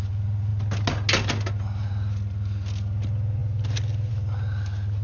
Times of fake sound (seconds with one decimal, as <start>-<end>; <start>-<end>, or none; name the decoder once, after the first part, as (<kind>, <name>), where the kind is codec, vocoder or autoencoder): none